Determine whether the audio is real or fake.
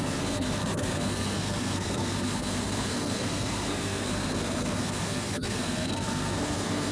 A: fake